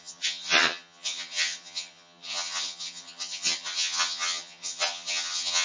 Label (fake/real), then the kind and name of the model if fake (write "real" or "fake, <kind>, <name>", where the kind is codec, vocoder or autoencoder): fake, vocoder, HiFi-GAN